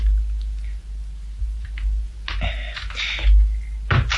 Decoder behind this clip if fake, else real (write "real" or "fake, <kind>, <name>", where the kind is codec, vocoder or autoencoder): real